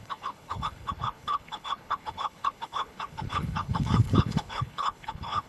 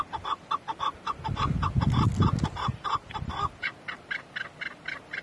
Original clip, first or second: second